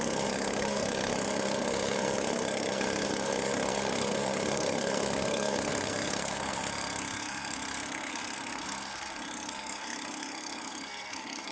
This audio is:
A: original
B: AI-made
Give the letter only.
B